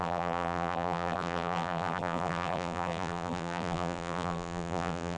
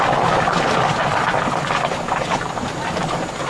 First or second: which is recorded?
second